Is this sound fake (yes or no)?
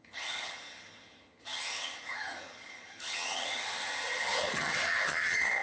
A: yes